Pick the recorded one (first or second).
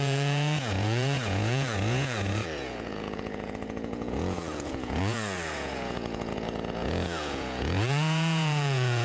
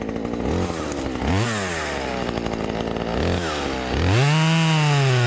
second